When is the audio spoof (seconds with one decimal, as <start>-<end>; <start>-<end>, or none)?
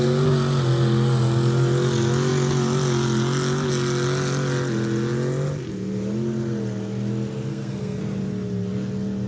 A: 7.5-8.0